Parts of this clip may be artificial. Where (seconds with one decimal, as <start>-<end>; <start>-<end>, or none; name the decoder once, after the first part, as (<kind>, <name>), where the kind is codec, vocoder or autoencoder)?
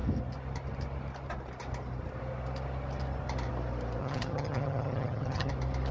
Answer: 4.0-5.5 (vocoder, HiFi-GAN)